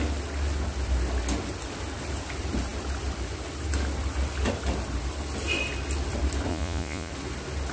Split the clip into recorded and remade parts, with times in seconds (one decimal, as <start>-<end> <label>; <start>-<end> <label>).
0.0-6.5 recorded; 6.5-7.1 remade; 7.1-7.7 recorded